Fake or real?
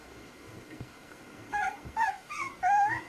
fake